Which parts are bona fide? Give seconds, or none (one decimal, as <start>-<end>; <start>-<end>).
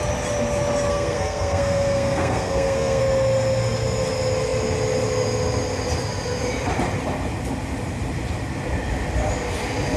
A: 0.0-0.9; 3.0-10.0